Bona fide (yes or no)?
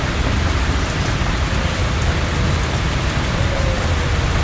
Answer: yes